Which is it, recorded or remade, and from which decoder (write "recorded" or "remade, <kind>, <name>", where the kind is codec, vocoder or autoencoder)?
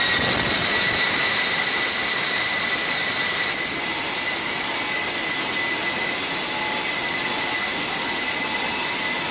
recorded